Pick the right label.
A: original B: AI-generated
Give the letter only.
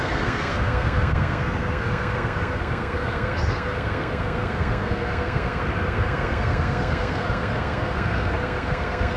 B